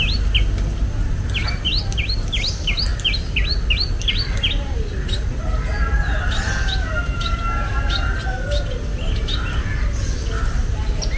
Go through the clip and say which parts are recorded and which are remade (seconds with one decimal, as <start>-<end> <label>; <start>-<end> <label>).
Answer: 0.0-11.2 recorded